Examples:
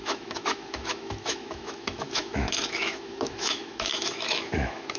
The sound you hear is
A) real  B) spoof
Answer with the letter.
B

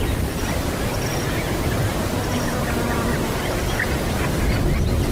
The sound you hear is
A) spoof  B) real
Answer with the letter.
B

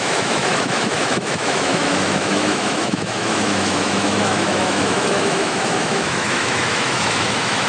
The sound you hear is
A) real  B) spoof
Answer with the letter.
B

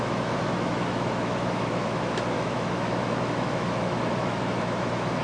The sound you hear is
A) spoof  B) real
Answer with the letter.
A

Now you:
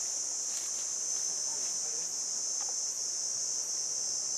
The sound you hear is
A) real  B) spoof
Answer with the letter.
A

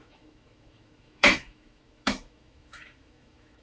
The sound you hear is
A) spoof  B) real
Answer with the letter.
A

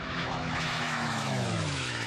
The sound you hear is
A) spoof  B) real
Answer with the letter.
A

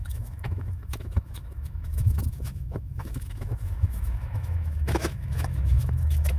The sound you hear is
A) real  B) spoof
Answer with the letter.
B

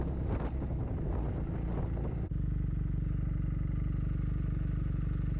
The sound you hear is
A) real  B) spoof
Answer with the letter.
A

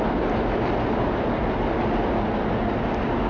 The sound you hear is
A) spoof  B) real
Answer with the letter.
B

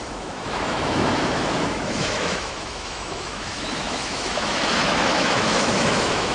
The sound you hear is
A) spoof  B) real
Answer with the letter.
A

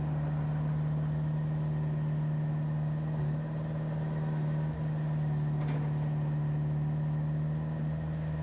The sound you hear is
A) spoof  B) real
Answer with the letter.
B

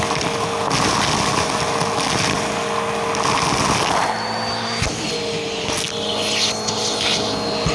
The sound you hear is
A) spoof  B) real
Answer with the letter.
B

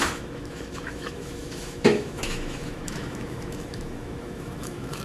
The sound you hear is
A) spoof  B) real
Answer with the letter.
A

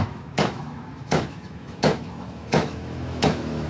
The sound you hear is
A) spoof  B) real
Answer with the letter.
A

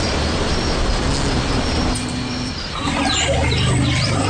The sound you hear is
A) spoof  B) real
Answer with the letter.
B